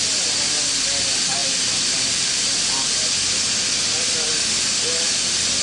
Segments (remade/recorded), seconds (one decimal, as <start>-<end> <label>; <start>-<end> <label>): 0.0-5.6 recorded